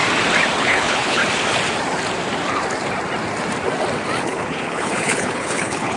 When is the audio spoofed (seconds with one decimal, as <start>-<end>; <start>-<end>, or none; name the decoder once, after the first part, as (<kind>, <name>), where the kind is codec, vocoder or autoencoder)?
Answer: 0.6-1.2 (codec, HILCodec); 4.2-6.0